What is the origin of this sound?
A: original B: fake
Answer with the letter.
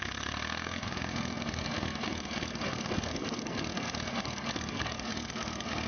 B